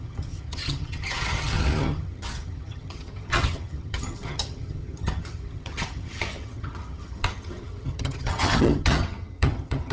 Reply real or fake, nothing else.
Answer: fake